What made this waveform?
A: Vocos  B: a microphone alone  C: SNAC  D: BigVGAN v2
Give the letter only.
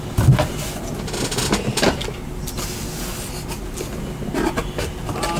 B